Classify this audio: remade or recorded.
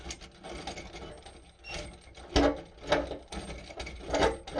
recorded